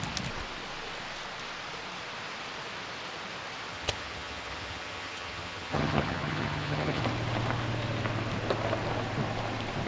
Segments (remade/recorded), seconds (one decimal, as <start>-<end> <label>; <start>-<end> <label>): 0.0-3.7 recorded; 3.7-7.0 remade; 7.0-9.9 recorded

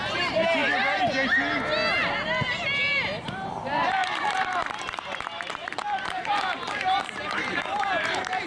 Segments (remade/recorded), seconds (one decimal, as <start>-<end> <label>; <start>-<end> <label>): 0.0-0.6 remade; 0.6-3.2 recorded; 3.2-8.5 remade

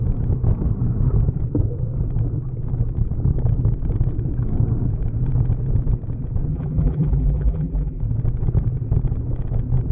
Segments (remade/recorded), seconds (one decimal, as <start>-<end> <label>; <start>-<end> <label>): 0.0-6.5 recorded; 6.5-8.0 remade; 8.0-9.9 recorded